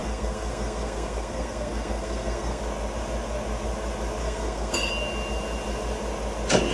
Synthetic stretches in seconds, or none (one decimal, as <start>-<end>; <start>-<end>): 0.0-2.6; 4.2-4.9